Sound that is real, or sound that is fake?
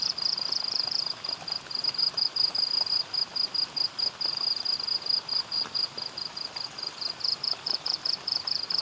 real